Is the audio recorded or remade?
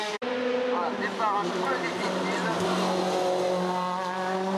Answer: recorded